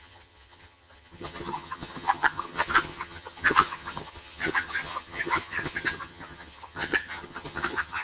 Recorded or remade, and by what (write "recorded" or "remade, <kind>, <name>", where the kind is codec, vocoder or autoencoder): remade, vocoder, HiFi-GAN